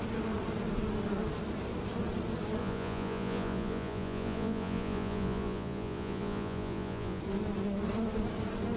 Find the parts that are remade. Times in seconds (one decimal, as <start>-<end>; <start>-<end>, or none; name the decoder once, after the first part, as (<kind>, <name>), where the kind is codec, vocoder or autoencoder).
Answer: 2.6-7.2 (vocoder, Vocos)